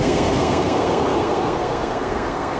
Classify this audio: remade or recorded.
remade